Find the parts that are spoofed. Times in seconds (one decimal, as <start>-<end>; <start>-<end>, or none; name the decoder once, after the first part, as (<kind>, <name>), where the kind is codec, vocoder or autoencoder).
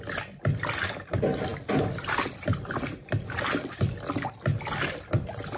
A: none